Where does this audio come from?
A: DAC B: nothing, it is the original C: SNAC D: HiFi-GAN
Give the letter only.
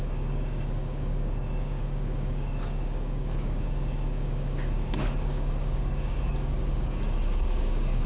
A